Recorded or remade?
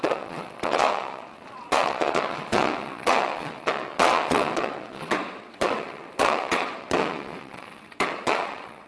remade